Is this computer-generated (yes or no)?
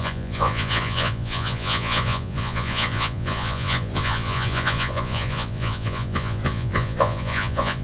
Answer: yes